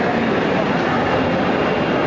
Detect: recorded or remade recorded